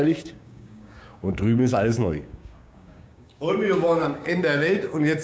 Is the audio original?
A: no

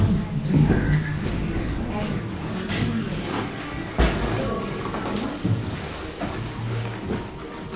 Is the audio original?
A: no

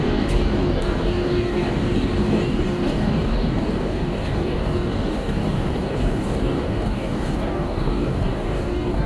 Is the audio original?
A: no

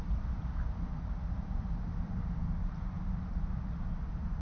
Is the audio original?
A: yes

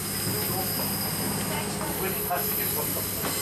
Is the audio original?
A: yes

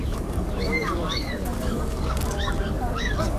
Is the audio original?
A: no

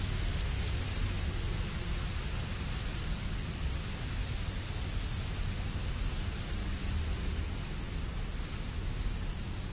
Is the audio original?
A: yes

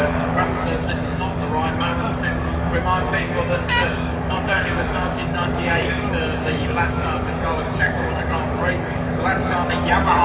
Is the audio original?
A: no